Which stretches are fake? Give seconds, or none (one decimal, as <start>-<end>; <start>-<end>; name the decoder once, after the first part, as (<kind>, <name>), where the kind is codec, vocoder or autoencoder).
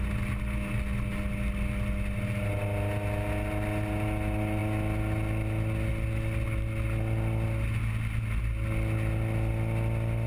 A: none